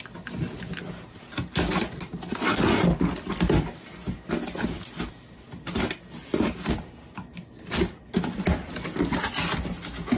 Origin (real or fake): real